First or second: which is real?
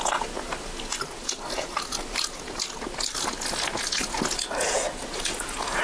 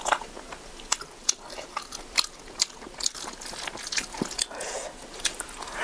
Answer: first